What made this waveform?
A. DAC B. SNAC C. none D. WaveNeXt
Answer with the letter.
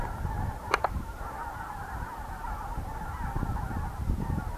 C